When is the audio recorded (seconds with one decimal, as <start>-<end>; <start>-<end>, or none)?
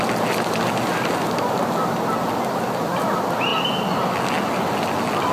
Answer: 0.0-5.3